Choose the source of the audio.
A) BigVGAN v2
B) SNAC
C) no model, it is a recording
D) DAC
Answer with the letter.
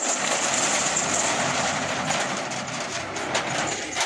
A